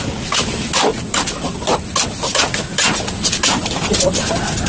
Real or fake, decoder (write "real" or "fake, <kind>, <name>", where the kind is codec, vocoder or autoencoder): real